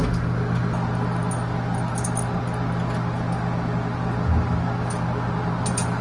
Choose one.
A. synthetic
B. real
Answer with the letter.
B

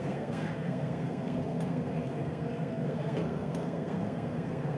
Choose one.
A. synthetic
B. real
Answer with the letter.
A